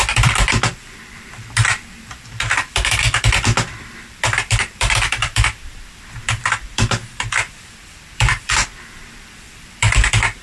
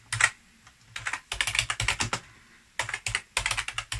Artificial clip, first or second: first